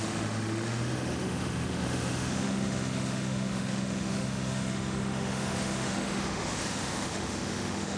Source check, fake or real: fake